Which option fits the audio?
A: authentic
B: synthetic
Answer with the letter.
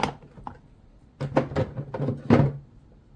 A